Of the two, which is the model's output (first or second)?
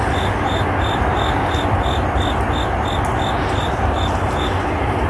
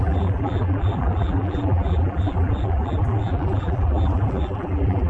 second